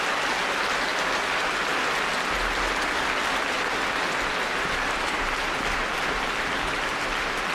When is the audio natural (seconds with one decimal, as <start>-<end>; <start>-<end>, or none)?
0.0-7.5